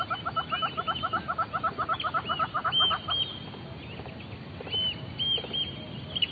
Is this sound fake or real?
real